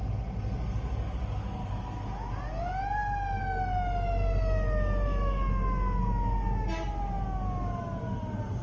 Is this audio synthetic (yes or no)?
no